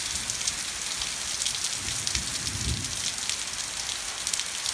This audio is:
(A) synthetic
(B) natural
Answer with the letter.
B